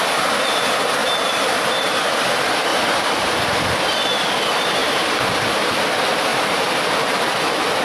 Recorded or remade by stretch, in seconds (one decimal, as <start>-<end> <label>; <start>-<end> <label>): 0.0-1.0 recorded; 1.0-1.8 remade; 1.8-2.7 recorded; 2.7-3.4 remade; 3.4-4.8 recorded; 4.8-5.3 remade; 5.3-6.3 recorded; 6.3-7.8 remade